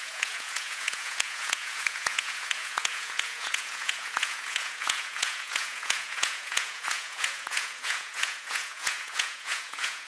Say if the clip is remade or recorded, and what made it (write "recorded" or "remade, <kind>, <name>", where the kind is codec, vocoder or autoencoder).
remade, vocoder, Vocos